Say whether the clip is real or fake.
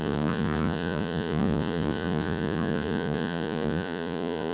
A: fake